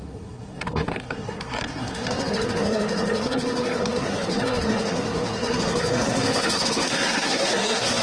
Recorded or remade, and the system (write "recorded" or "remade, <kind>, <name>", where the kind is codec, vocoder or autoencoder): remade, codec, SNAC